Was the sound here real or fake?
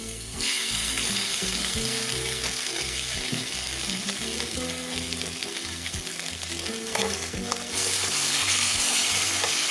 fake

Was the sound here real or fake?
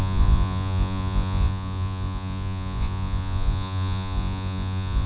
fake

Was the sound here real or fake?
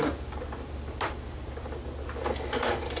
real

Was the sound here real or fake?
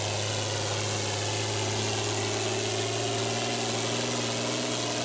real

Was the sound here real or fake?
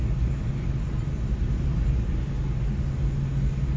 real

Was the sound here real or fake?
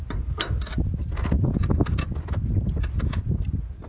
real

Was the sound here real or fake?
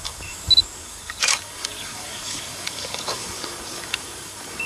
fake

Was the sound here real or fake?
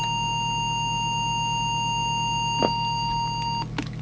real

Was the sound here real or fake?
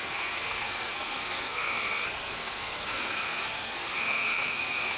fake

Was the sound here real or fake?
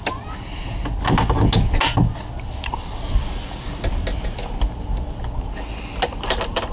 real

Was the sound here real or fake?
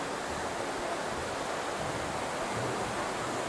real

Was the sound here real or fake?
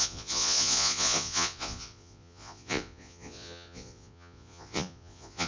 fake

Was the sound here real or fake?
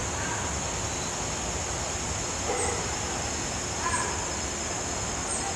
real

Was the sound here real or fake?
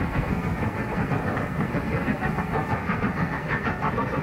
fake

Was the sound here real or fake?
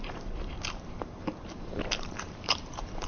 fake